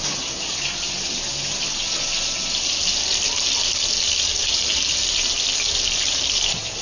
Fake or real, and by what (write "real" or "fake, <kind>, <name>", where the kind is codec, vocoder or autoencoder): real